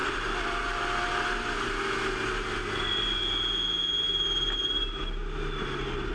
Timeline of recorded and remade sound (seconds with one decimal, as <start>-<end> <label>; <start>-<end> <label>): 0.0-0.6 remade; 0.6-6.1 recorded

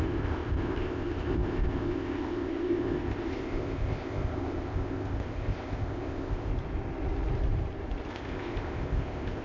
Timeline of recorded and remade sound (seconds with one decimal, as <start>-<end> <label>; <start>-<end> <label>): 0.0-6.5 remade; 6.5-8.1 recorded; 8.1-9.4 remade

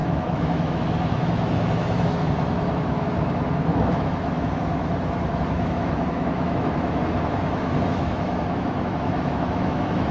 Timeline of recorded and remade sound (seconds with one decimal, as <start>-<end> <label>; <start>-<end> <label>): 0.0-10.1 remade